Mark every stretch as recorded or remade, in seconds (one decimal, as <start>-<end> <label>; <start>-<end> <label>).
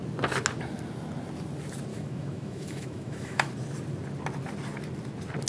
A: 0.0-1.9 recorded; 1.9-3.5 remade; 3.5-5.5 recorded